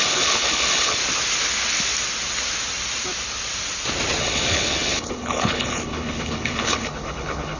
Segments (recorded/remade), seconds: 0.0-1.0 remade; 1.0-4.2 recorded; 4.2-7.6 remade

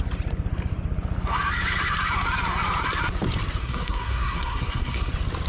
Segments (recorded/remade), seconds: 0.0-3.6 recorded; 3.6-5.1 remade; 5.1-5.5 recorded

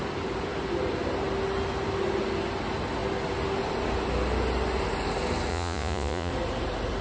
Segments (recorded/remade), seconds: 0.0-5.5 recorded; 5.5-6.3 remade; 6.3-7.0 recorded